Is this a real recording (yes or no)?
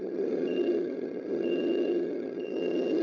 no